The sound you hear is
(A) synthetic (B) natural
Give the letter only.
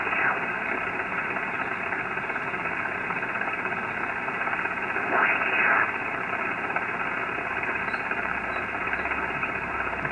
A